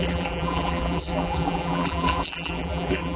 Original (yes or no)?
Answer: no